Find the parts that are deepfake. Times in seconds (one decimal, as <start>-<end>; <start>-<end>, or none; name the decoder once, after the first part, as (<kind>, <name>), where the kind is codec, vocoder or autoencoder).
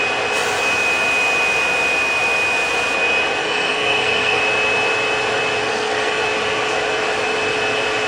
3.4-4.4 (codec, SNAC); 5.6-6.2